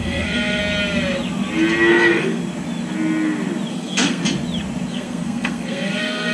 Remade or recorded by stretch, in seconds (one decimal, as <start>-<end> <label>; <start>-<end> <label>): 0.0-0.6 remade; 0.6-1.9 recorded; 1.9-2.4 remade; 2.4-3.7 recorded; 3.7-4.2 remade; 4.2-4.9 recorded; 4.9-6.3 remade